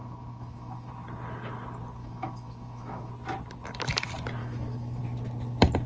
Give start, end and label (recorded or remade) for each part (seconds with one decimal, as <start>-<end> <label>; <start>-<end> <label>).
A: 0.0-0.9 remade; 0.9-2.0 recorded; 2.0-3.1 remade; 3.1-4.4 recorded; 4.4-5.0 remade; 5.0-5.9 recorded